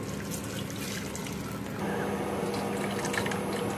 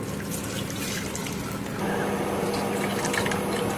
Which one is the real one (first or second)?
first